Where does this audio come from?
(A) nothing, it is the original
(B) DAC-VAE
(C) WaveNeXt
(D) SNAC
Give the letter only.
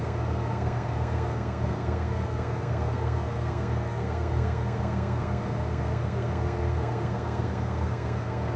D